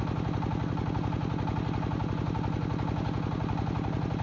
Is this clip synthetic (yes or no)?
no